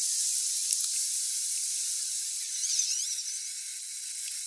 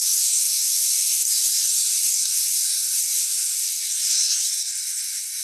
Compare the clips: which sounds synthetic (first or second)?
second